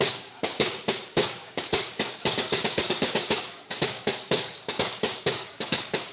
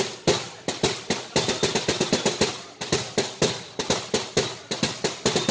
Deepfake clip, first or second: first